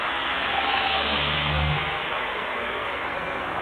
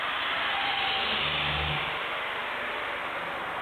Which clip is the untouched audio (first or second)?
second